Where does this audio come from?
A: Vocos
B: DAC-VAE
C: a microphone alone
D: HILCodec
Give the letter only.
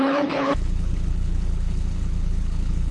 D